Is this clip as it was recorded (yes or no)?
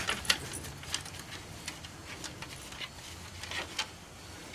yes